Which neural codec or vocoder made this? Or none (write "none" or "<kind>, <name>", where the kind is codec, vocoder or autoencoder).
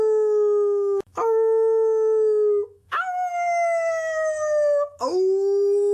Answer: autoencoder, DAC-VAE